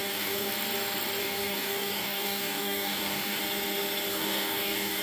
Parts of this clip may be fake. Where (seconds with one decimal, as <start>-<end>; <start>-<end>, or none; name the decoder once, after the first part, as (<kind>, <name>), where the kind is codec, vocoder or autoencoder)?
0.0-0.5 (codec, DAC); 1.2-3.4; 4.1-5.0